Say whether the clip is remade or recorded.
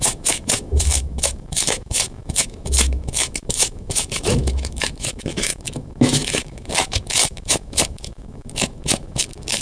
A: remade